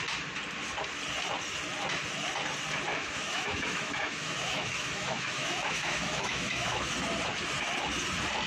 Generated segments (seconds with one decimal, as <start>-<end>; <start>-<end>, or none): 2.9-6.9